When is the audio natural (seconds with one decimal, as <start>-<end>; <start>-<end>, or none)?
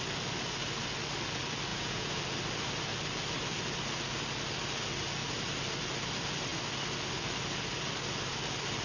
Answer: 0.0-1.7; 2.2-8.8